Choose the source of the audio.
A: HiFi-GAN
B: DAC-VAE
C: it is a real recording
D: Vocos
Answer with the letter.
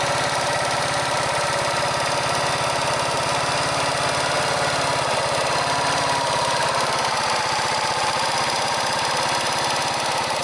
C